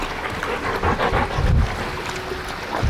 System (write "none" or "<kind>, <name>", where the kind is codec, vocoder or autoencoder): none